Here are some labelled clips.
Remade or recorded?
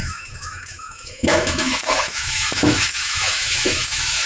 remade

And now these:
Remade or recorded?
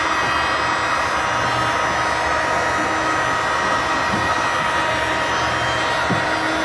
recorded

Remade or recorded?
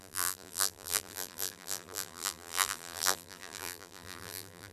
remade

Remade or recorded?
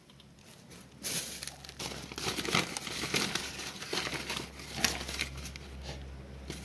recorded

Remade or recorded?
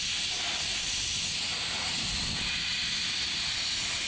recorded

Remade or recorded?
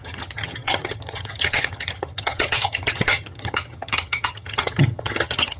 remade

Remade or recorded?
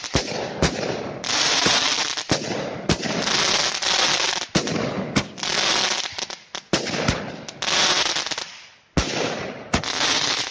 recorded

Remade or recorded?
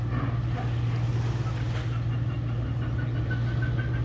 recorded